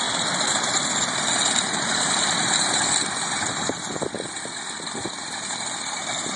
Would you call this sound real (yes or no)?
yes